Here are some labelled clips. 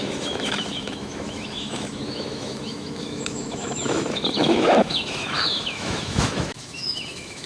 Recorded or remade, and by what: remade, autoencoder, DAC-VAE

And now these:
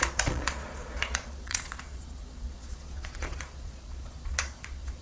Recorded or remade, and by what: remade, vocoder, Vocos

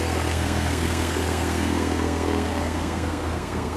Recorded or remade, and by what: remade, codec, SNAC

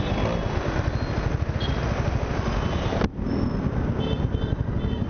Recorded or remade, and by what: recorded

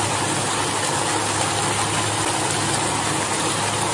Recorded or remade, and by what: recorded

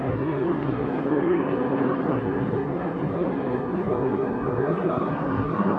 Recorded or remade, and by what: remade, codec, SNAC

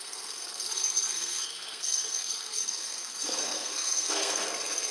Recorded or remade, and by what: remade, codec, SNAC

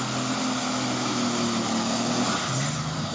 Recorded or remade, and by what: recorded